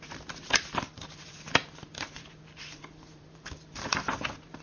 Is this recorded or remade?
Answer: remade